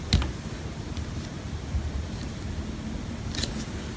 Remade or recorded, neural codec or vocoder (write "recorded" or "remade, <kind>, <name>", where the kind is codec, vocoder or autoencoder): recorded